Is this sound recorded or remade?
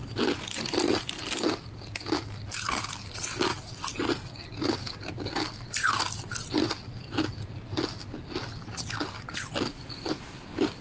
recorded